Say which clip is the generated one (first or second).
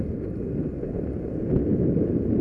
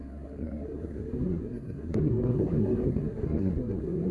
second